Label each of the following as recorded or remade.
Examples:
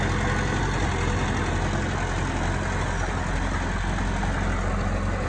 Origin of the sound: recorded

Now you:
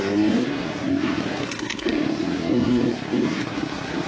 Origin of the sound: remade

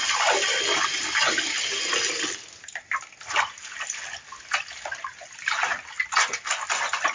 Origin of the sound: recorded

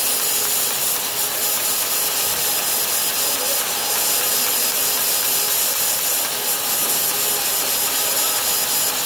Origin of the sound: recorded